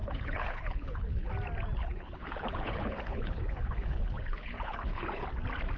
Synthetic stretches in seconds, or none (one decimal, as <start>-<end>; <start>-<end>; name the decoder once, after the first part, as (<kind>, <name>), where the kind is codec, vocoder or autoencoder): 0.0-1.3 (codec, HILCodec); 1.8-5.3